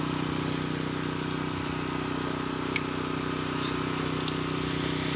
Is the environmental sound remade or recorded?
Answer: recorded